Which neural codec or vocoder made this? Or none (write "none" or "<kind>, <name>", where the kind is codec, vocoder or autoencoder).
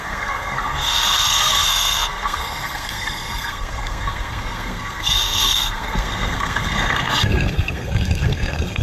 codec, SNAC